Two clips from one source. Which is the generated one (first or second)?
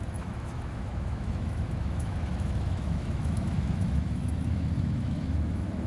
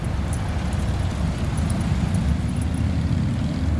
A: first